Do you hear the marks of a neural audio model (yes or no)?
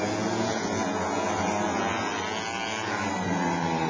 no